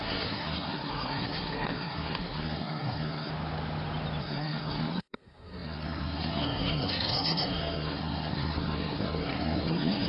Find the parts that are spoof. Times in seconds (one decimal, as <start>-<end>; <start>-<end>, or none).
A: 0.0-3.3; 4.2-10.1